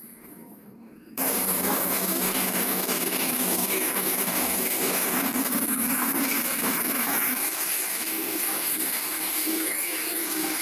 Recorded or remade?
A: remade